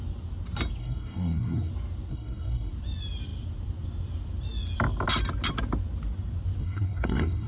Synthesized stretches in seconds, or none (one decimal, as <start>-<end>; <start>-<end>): 0.8-1.7; 2.1-2.7; 6.6-7.5